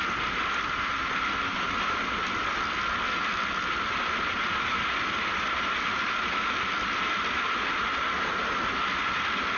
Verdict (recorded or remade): recorded